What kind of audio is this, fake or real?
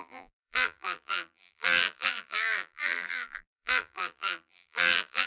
fake